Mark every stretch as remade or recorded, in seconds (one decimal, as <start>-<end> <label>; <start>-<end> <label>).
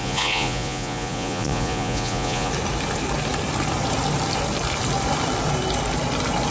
0.0-2.5 remade; 2.5-6.5 recorded